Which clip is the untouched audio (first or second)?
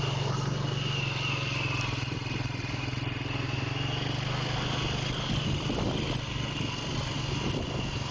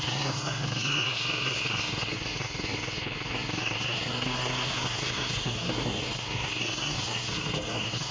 first